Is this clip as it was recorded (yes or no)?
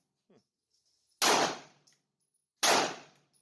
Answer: yes